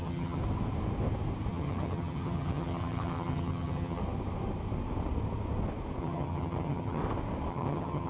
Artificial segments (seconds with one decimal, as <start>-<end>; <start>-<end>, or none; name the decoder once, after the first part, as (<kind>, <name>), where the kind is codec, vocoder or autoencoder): 0.0-0.4 (vocoder, HiFi-GAN); 1.5-4.0; 6.0-7.0; 7.5-8.1